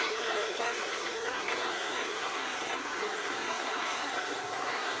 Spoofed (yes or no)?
yes